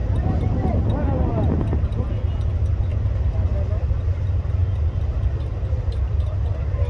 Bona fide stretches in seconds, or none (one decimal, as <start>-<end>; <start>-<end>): 0.8-6.9